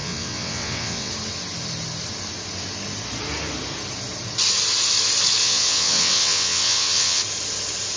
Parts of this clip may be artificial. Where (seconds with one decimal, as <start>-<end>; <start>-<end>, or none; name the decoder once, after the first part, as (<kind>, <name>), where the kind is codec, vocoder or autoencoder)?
0.0-1.1 (vocoder, WaveNeXt); 5.4-7.2

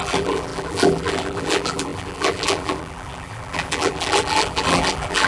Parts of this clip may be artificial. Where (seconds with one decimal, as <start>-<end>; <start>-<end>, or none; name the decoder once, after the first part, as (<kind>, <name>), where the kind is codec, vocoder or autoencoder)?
0.0-5.3 (vocoder, BigVGAN v2)

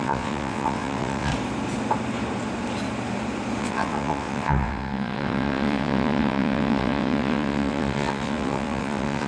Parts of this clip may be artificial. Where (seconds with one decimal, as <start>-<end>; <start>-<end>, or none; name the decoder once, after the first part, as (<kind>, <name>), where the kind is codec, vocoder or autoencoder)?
0.0-1.3 (vocoder, WaveNeXt); 3.6-9.3

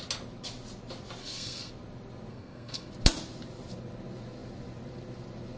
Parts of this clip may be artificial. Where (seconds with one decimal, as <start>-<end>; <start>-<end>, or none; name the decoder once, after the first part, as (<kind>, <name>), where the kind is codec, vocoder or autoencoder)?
1.2-1.7 (codec, SNAC); 2.3-2.9

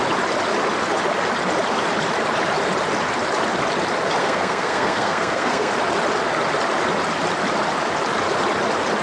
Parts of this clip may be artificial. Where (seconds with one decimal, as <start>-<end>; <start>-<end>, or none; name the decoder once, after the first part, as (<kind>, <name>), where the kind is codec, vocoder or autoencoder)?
4.2-5.7 (codec, SNAC)

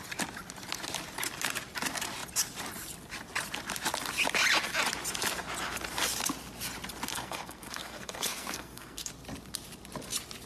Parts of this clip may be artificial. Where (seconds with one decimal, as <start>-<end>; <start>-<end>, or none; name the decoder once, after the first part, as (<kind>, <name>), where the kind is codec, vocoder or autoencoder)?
7.1-9.1 (codec, SNAC)